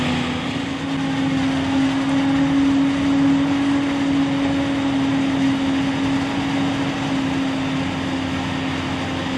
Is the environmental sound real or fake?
real